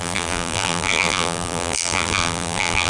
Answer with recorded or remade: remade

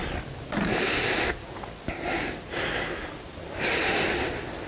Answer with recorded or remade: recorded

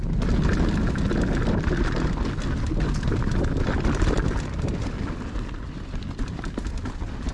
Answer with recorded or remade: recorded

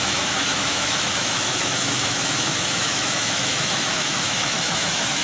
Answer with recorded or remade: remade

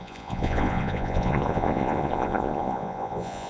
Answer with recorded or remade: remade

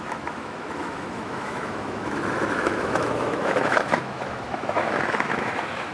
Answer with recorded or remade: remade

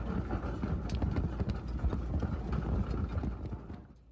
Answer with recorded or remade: recorded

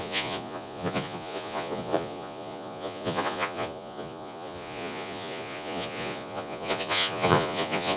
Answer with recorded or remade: remade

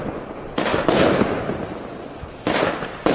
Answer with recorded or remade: recorded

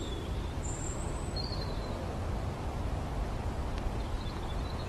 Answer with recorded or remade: remade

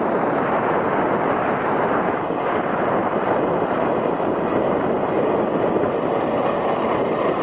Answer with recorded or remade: recorded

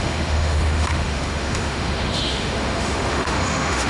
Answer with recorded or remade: remade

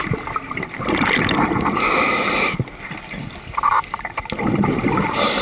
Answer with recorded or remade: recorded